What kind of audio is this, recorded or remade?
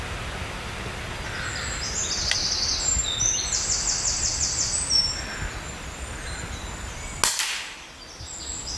recorded